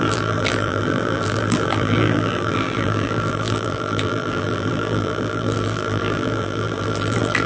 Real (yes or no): no